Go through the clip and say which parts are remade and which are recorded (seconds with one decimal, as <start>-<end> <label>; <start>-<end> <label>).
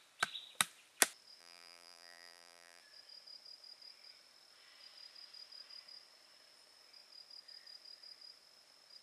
0.0-1.4 recorded; 1.4-2.8 remade; 2.8-9.0 recorded